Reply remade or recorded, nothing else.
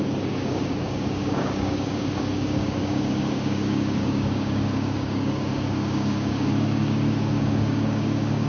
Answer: remade